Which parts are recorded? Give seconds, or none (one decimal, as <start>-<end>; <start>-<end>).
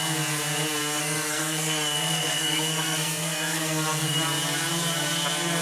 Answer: 0.0-0.8; 4.2-5.6